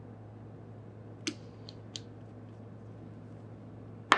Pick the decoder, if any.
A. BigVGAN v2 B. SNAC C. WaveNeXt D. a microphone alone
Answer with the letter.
D